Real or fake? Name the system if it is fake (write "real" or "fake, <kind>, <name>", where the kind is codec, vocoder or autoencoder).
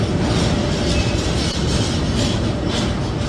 real